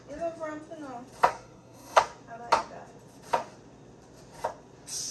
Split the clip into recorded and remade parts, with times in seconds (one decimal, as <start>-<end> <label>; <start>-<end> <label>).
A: 0.0-1.3 recorded; 1.3-2.0 remade; 2.0-5.1 recorded